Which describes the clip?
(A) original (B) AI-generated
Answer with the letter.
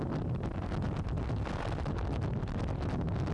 A